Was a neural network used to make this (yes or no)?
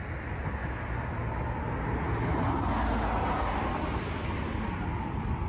no